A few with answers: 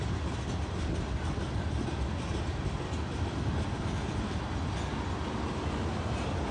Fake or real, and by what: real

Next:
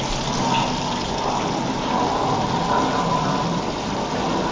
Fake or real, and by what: real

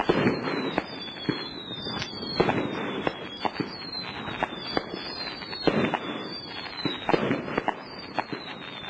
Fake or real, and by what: real